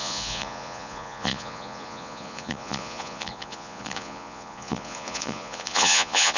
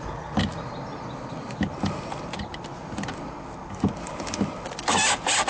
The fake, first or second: first